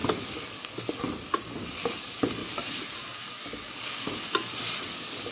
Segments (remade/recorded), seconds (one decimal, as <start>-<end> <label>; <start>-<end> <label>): 0.0-5.3 recorded